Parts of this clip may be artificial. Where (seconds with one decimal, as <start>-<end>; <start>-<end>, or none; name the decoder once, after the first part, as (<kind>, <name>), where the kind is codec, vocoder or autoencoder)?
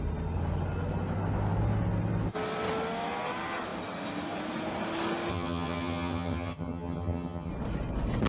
5.3-7.5 (vocoder, HiFi-GAN)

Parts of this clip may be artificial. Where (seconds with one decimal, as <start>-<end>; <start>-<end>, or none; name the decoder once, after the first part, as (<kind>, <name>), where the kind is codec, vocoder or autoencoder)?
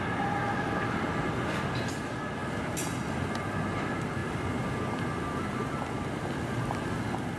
none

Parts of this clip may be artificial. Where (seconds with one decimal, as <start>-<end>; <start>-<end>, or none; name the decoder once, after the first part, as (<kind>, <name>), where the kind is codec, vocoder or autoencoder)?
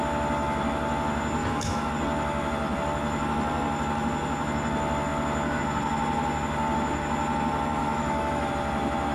1.4-1.9 (autoencoder, DAC-VAE); 7.8-8.5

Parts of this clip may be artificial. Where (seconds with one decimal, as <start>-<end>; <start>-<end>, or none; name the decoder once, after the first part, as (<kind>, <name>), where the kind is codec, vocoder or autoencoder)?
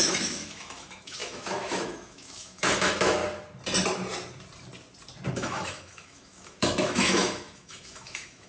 0.0-3.2 (autoencoder, DAC-VAE); 5.3-8.5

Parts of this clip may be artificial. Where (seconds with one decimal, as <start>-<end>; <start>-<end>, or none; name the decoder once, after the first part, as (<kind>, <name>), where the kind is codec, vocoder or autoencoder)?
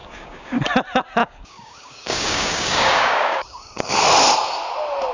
0.0-0.6 (codec, DAC); 1.2-3.9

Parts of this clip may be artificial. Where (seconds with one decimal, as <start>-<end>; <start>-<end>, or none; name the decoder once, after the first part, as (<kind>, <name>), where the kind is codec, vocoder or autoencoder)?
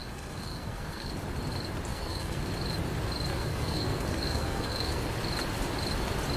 0.0-1.1 (codec, SNAC); 1.9-2.4; 3.3-5.1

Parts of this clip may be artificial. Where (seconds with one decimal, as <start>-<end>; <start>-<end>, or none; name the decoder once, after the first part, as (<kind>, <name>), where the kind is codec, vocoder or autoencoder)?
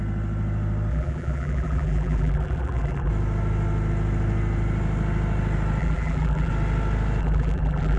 0.9-3.1 (vocoder, BigVGAN v2); 5.8-6.5; 7.2-8.0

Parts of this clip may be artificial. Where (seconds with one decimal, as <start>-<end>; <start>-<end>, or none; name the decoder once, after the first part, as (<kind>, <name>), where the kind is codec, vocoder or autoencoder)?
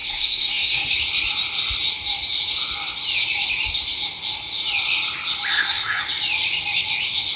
0.0-0.9 (codec, SNAC); 5.5-6.0